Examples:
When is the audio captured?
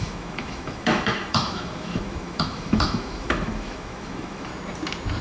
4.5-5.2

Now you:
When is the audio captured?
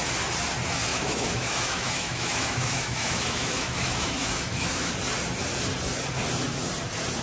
0.0-0.9; 4.9-7.2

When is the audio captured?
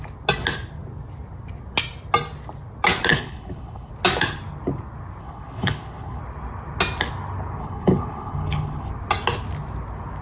0.0-3.1; 3.9-5.2; 6.2-7.6; 8.9-10.2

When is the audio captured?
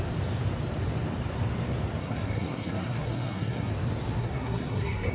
0.0-2.0; 3.7-4.2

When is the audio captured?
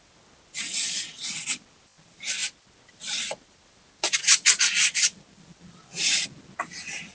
0.0-7.1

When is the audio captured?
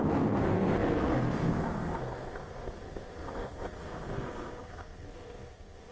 none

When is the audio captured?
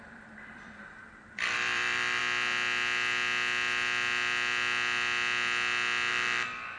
2.2-6.1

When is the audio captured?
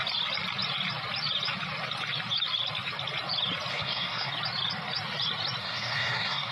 0.0-3.7; 4.3-5.6